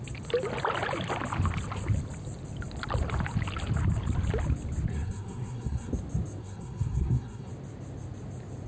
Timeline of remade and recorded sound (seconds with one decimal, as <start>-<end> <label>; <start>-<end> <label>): 0.0-4.9 recorded; 4.9-5.9 remade; 5.9-6.4 recorded; 6.4-7.5 remade; 7.5-8.7 recorded